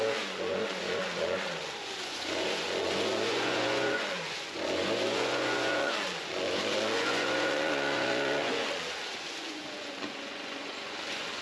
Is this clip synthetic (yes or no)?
yes